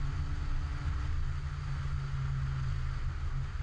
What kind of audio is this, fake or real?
real